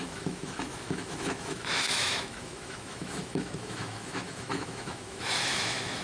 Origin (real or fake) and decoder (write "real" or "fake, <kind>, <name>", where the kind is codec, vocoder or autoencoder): fake, autoencoder, DAC-VAE